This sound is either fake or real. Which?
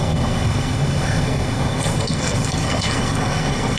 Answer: fake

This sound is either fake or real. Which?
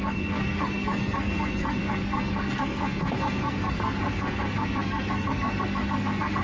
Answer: fake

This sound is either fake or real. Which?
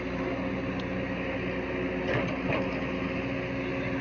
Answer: real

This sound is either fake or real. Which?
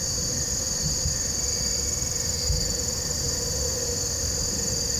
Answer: real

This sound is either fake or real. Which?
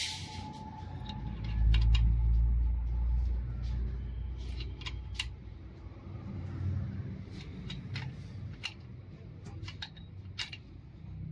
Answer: real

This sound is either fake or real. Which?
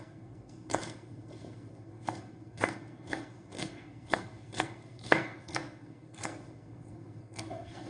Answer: fake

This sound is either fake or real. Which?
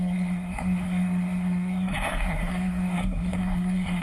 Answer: fake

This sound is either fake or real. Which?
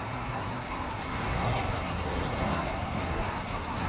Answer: fake